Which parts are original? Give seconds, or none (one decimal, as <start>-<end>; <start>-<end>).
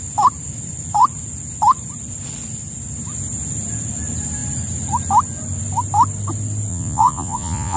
0.0-6.7